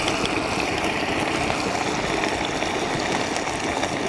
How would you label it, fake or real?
real